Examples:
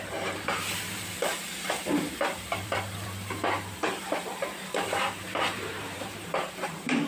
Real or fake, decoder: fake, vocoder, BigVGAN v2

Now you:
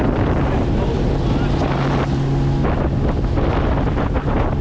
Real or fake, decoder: real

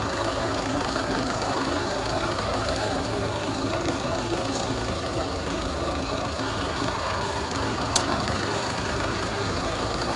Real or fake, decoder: fake, codec, SNAC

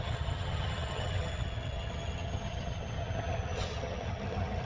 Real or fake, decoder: fake, vocoder, HiFi-GAN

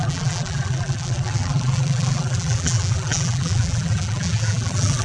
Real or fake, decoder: fake, vocoder, BigVGAN v2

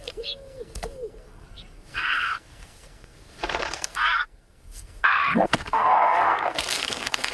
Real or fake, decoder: fake, codec, SNAC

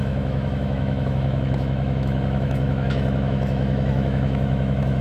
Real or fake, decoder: fake, autoencoder, DAC-VAE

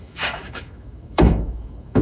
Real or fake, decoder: fake, autoencoder, DAC-VAE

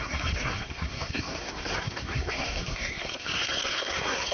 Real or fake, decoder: fake, codec, SNAC